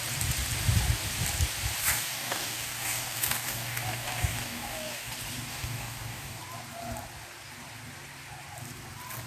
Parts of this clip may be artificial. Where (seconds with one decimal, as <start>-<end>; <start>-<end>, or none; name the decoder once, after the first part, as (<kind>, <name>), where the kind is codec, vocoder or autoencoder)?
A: 1.8-5.1 (codec, DAC); 5.5-6.4